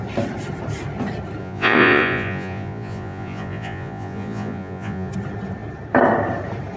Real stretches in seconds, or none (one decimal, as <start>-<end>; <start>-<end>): 0.0-1.4; 5.1-6.8